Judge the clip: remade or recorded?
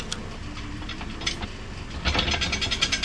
recorded